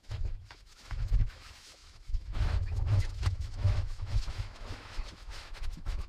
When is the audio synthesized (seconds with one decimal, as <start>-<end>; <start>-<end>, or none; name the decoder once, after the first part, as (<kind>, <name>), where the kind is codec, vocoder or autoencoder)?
0.0-6.1 (autoencoder, DAC-VAE)